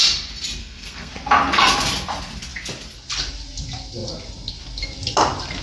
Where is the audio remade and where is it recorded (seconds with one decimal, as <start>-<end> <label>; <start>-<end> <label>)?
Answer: 0.0-0.6 recorded; 0.6-1.1 remade; 1.1-5.6 recorded